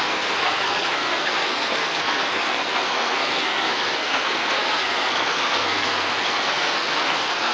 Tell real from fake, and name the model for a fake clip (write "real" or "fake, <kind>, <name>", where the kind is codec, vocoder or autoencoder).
fake, codec, SNAC